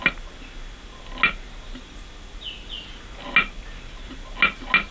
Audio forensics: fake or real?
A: real